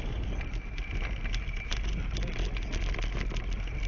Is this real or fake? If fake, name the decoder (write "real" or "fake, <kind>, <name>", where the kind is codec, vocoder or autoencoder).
real